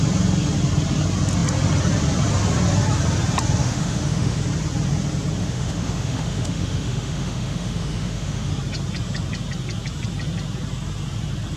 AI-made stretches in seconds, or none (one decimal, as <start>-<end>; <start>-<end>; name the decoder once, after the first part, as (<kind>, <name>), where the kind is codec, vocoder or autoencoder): 3.6-4.4 (autoencoder, DAC-VAE); 5.4-8.5